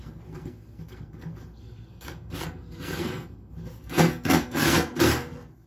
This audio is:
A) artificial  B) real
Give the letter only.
A